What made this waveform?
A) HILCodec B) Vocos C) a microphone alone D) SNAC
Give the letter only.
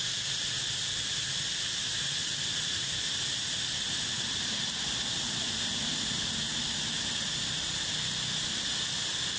C